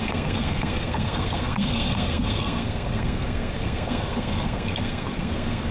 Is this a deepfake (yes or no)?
yes